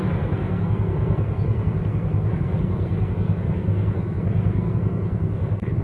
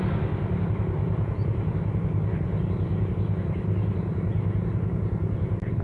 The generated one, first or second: first